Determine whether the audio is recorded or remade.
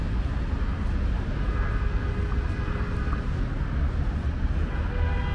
recorded